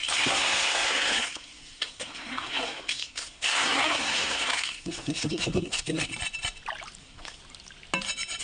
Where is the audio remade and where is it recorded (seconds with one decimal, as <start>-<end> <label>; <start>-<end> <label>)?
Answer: 0.0-6.1 remade; 6.1-7.0 recorded; 7.0-7.4 remade; 7.4-8.4 recorded